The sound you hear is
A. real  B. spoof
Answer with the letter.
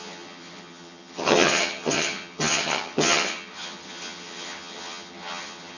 B